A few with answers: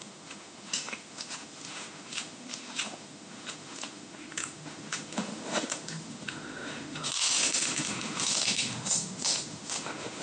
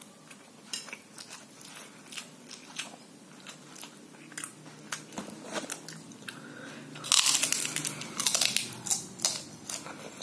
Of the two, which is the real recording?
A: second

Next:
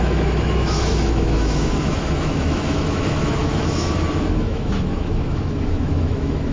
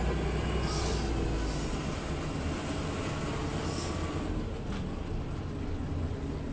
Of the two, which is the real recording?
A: second